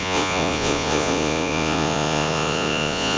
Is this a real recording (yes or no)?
no